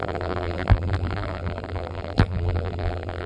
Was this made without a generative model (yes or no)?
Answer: no